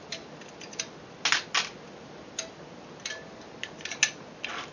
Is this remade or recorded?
recorded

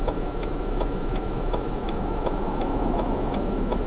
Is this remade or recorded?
remade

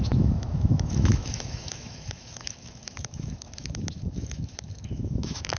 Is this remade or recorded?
remade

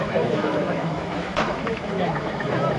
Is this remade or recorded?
remade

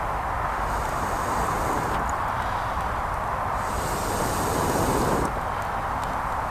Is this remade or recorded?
recorded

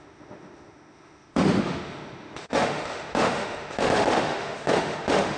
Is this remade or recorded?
remade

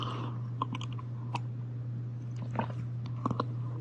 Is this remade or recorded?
recorded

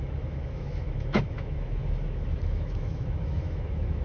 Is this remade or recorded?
remade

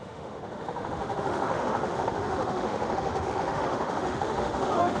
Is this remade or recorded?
remade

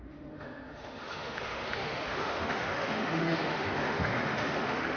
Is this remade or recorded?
remade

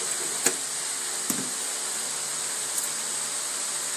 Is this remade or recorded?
recorded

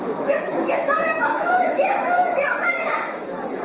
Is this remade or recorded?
remade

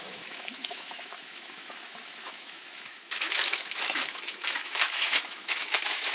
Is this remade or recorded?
remade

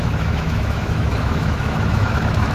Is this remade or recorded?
remade